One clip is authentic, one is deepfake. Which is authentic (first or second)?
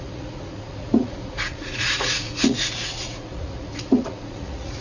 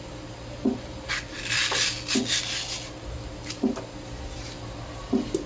second